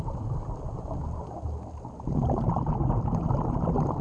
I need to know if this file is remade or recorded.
recorded